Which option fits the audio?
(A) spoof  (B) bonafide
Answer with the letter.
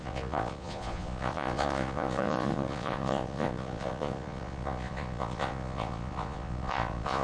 A